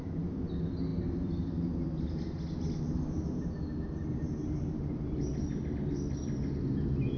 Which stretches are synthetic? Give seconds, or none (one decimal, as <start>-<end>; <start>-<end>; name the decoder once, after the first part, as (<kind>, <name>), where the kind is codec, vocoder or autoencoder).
none